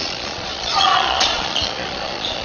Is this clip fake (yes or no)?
yes